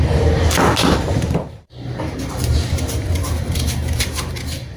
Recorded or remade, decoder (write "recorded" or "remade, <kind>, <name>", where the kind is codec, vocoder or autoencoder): remade, vocoder, BigVGAN v2